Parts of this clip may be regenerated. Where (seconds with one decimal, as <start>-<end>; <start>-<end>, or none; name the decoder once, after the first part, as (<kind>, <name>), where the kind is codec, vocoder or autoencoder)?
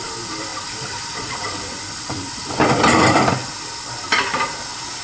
0.0-3.4 (vocoder, BigVGAN v2)